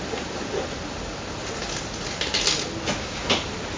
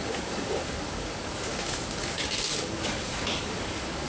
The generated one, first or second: second